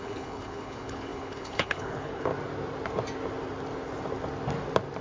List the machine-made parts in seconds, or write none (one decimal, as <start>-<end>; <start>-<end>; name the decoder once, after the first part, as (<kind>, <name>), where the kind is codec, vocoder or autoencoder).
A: 0.0-2.3 (codec, HILCodec)